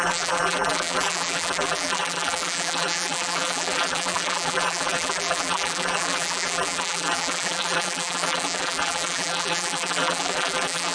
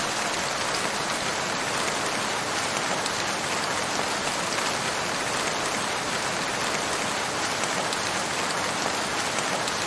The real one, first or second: second